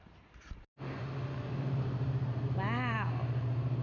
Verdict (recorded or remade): recorded